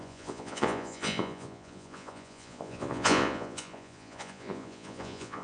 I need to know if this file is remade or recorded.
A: remade